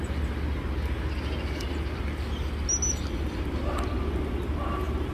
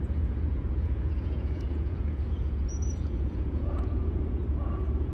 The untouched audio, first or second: first